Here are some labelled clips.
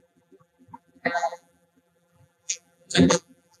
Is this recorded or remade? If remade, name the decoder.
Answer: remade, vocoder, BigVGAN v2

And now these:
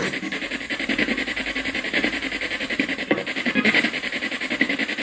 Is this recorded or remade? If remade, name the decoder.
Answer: remade, vocoder, BigVGAN v2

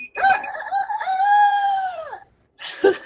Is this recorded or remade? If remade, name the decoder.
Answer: remade, vocoder, BigVGAN v2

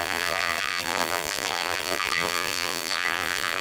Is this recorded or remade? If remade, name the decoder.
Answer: remade, vocoder, BigVGAN v2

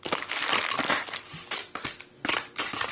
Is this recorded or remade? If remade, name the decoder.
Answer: recorded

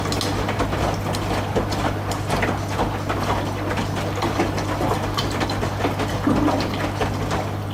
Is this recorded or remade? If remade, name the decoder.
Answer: recorded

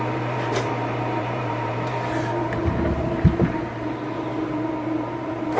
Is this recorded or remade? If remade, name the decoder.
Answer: remade, vocoder, BigVGAN v2